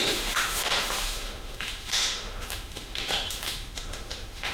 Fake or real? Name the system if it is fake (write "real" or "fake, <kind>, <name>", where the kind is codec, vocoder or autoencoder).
fake, autoencoder, DAC-VAE